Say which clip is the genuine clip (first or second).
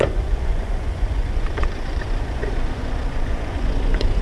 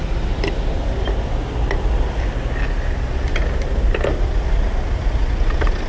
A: second